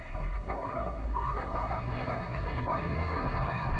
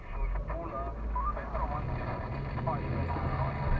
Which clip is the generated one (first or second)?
first